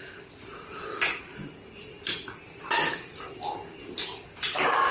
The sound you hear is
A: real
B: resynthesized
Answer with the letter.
A